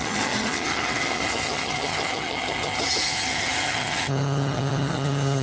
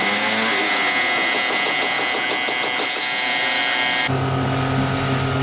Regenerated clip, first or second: first